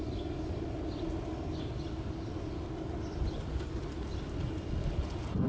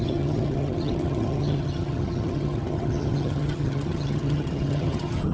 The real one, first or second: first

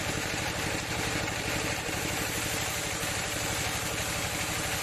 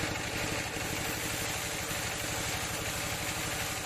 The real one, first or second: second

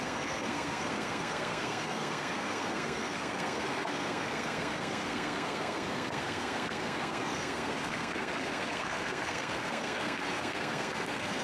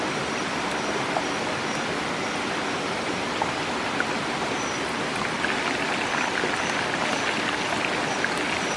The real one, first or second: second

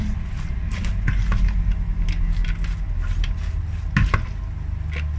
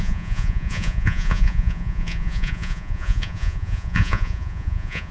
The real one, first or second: first